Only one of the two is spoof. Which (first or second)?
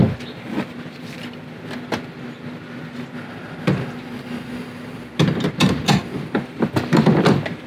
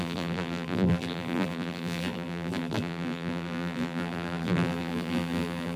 second